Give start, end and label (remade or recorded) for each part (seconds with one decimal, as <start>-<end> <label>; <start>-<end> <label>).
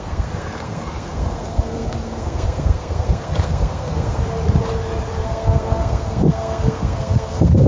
0.0-4.2 remade; 4.2-5.2 recorded; 5.2-7.7 remade